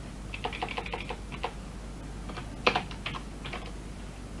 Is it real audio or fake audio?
real